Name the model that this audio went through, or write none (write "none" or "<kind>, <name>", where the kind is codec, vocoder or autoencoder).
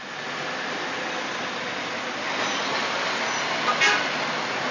none